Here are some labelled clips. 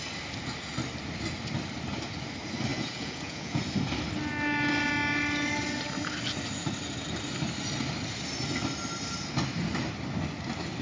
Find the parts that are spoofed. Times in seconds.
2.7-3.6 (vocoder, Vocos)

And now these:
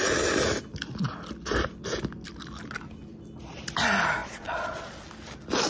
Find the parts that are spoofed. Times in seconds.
4.2-4.9 (vocoder, Vocos)

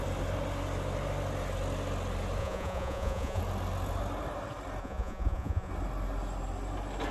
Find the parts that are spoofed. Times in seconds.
2.4-3.4 (vocoder, Vocos); 4.8-5.7

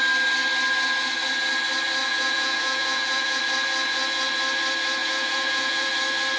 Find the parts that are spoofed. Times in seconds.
2.0-3.4 (vocoder, Vocos); 5.0-5.9